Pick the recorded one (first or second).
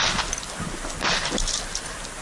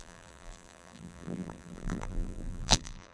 first